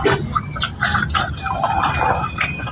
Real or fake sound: real